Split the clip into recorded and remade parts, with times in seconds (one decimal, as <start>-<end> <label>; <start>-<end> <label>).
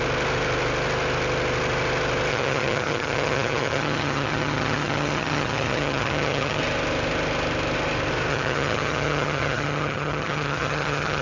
0.0-2.3 recorded; 2.3-6.6 remade; 6.6-8.3 recorded; 8.3-11.2 remade